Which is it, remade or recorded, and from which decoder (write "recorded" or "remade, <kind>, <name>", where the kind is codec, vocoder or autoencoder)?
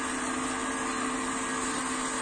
recorded